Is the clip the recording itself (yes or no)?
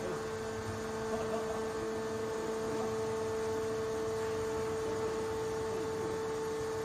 yes